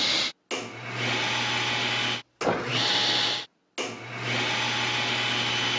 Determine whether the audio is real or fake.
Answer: real